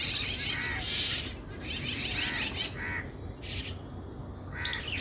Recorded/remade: recorded